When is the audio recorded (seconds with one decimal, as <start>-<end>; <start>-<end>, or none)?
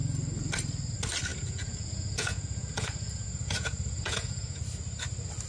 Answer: 0.0-1.3; 4.6-5.5